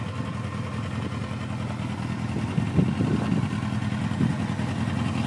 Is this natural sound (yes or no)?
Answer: yes